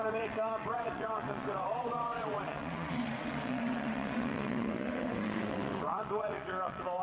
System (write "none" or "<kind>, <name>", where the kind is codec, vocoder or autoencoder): vocoder, WaveNeXt